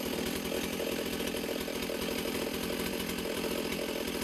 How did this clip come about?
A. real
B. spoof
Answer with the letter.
B